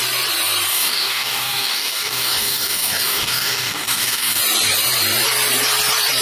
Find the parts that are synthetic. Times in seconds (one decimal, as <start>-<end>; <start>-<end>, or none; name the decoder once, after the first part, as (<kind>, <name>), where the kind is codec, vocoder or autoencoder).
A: 0.7-4.4 (codec, DAC)